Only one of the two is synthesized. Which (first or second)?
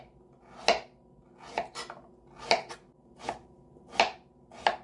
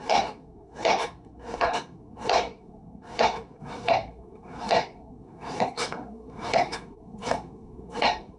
second